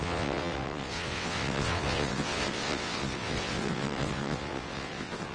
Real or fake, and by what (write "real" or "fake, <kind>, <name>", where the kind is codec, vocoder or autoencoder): fake, vocoder, WaveNeXt